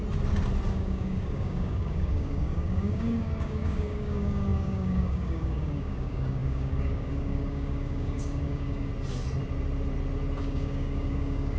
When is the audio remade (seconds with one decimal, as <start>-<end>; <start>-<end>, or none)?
0.7-8.9; 10.4-11.6